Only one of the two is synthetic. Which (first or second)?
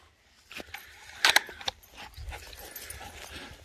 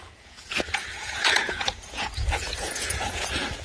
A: second